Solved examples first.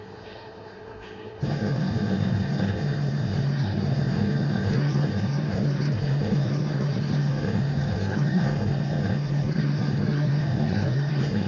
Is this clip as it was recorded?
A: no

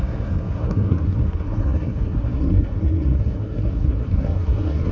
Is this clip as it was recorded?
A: no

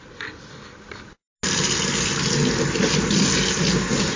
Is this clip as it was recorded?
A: yes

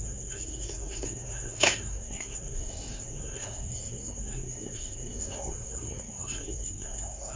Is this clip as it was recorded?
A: no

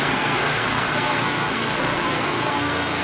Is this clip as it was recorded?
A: no